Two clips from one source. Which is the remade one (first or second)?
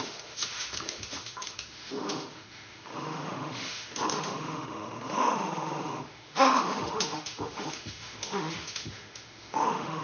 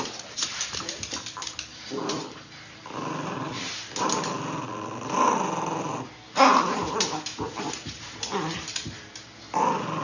first